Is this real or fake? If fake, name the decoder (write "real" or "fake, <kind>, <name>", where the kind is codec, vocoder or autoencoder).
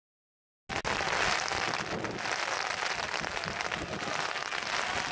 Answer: real